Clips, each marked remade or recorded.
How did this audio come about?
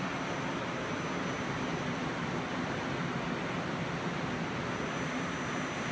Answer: recorded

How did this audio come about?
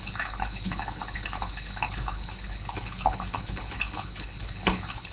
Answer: remade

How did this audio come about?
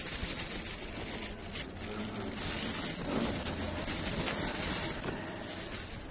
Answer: recorded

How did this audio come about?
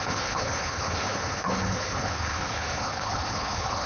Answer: remade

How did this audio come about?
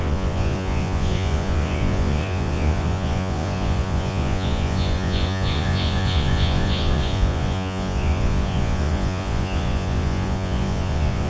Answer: remade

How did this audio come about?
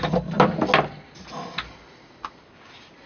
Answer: recorded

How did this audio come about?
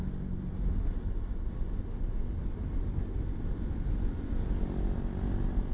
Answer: recorded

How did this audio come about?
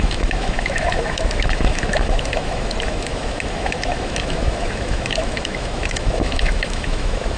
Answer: remade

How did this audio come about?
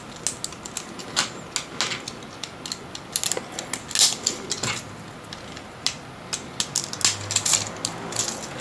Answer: recorded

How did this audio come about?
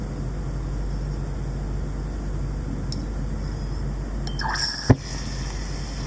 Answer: recorded